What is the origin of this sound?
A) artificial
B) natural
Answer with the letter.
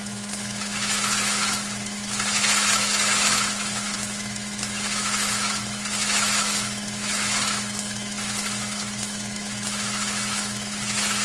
A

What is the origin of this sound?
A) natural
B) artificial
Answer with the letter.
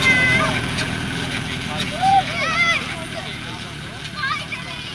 B